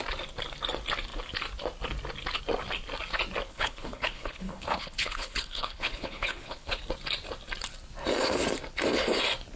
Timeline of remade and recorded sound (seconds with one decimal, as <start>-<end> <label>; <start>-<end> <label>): 0.0-3.5 recorded; 3.5-6.8 remade; 6.8-9.6 recorded